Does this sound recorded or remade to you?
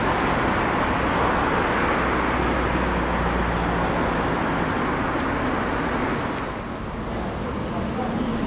recorded